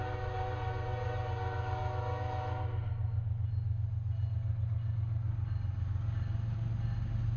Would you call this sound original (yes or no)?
yes